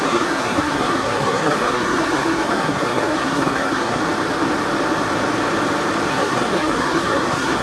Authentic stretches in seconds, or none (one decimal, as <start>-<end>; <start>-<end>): 4.0-6.1